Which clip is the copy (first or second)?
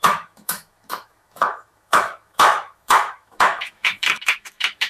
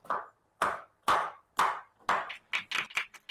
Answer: first